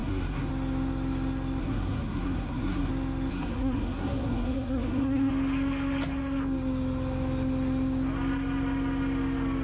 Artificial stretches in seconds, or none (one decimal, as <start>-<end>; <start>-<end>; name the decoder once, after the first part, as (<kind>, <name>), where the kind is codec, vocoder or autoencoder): 0.0-0.5 (codec, SNAC); 1.6-2.9; 3.3-5.3